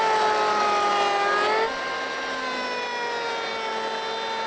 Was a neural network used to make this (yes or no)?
no